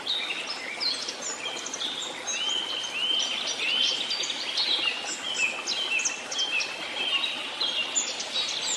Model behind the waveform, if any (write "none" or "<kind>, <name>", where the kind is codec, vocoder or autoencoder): none